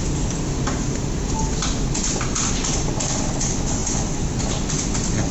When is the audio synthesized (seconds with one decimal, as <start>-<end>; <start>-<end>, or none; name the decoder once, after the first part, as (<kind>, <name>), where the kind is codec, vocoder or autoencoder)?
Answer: none